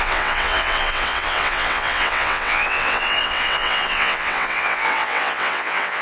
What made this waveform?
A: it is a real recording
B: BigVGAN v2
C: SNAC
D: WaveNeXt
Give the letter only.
D